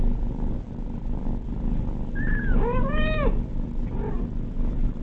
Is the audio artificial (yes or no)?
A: no